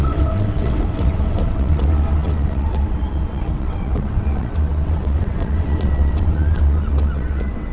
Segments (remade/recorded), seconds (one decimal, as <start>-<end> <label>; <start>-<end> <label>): 0.0-7.7 remade